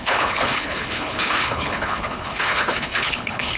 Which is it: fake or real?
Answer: fake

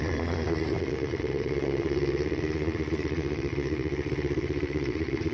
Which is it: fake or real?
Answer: fake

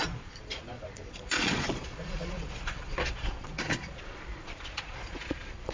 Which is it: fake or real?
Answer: fake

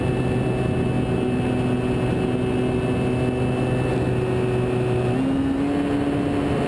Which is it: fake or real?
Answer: real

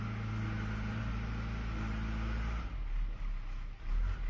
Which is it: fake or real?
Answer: real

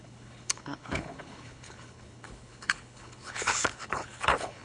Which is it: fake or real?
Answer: fake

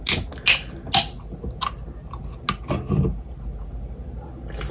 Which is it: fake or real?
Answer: real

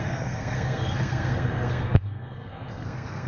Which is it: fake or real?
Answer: fake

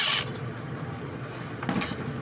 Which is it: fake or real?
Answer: real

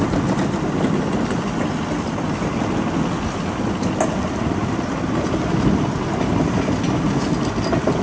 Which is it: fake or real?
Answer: real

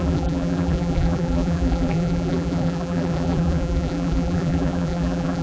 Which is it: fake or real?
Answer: fake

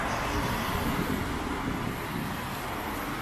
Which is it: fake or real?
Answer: real